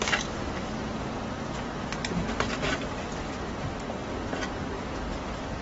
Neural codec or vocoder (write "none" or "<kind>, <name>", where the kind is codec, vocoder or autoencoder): none